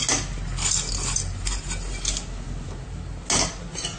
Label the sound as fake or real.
real